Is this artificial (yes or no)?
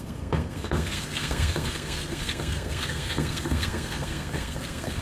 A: yes